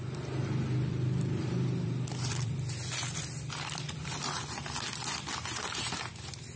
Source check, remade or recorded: remade